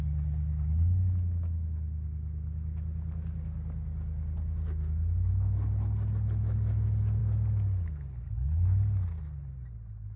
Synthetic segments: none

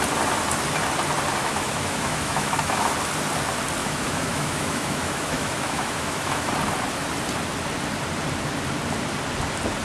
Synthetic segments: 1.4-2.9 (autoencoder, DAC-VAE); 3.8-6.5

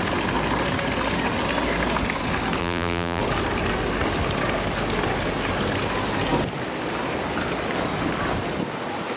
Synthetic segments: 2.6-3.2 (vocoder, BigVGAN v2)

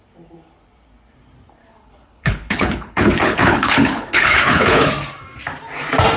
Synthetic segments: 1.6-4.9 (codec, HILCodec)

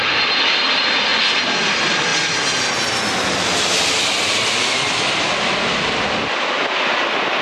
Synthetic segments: none

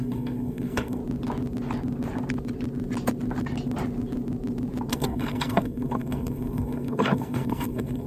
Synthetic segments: 0.0-1.0 (codec, SNAC); 4.9-8.1

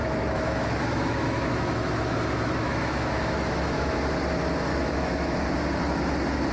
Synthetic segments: 0.0-3.9 (autoencoder, DAC-VAE); 4.7-5.4